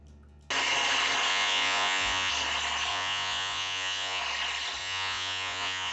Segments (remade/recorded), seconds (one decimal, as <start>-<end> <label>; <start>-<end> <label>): 0.0-1.3 recorded; 1.3-2.3 remade; 2.3-2.9 recorded; 2.9-4.2 remade; 4.2-4.8 recorded; 4.8-5.9 remade